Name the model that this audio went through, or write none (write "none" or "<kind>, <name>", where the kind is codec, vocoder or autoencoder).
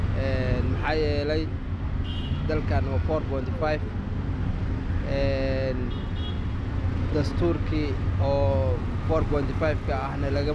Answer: none